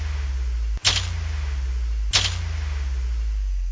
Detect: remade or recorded recorded